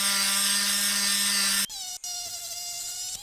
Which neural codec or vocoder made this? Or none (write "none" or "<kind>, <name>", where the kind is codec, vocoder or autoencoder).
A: none